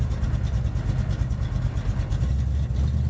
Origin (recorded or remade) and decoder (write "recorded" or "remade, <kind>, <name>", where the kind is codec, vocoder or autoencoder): recorded